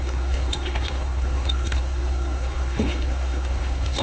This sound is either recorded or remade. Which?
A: remade